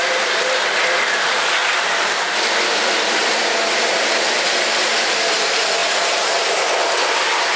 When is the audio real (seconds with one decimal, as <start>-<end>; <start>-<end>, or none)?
0.0-1.6; 5.1-5.8; 6.8-7.6